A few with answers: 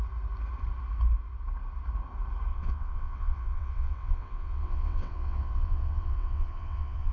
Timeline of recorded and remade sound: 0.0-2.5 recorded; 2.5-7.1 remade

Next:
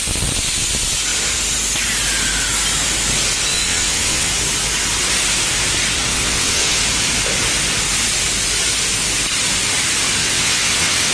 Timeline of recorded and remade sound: 0.0-3.5 recorded; 3.5-4.3 remade; 4.3-6.1 recorded; 6.1-6.8 remade; 6.8-10.2 recorded; 10.2-11.1 remade

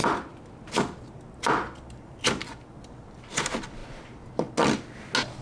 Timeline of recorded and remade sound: 0.0-5.4 recorded

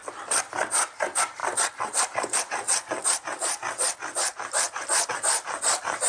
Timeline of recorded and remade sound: 0.0-6.1 recorded